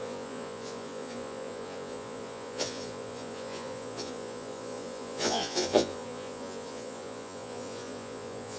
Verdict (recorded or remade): remade